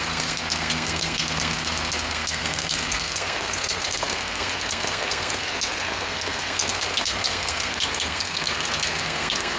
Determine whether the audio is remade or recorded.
remade